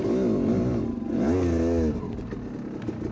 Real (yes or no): yes